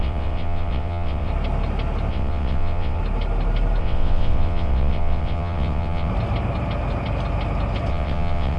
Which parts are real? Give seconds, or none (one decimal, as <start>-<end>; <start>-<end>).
1.3-2.1; 3.0-3.8; 6.1-7.9